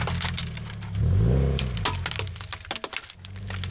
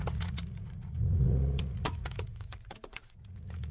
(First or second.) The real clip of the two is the first